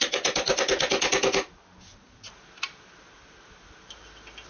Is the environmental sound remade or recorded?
recorded